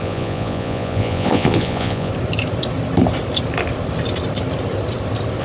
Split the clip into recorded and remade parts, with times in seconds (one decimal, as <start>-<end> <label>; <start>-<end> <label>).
0.0-2.1 remade; 2.1-5.4 recorded